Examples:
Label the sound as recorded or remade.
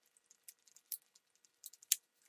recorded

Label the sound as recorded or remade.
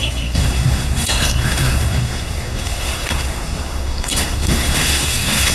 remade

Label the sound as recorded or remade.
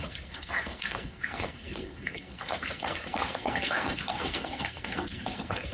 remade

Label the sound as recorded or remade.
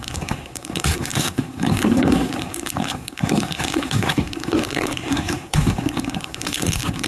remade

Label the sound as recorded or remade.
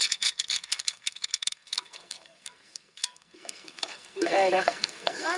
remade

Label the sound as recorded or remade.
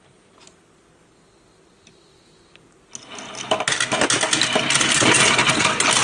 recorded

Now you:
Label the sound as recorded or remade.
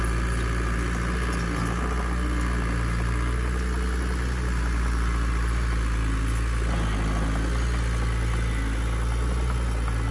recorded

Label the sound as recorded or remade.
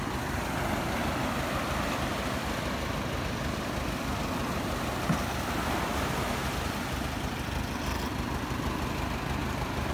recorded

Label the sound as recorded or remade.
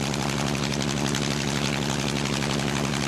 recorded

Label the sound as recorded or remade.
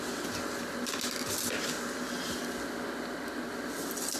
recorded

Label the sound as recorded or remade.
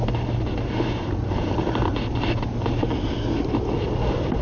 recorded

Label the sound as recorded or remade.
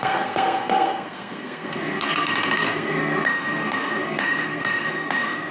remade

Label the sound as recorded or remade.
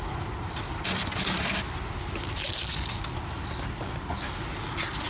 recorded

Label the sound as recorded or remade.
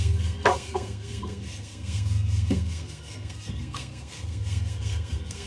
remade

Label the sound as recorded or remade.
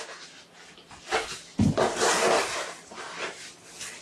recorded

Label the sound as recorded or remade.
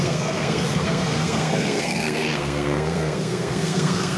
remade